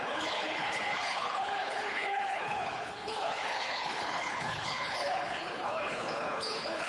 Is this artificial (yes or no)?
yes